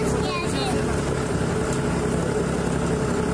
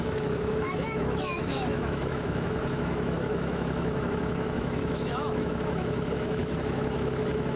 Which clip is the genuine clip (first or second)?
first